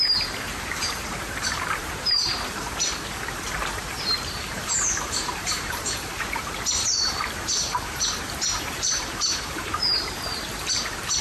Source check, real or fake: fake